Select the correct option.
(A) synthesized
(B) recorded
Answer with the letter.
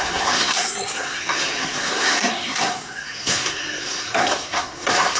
A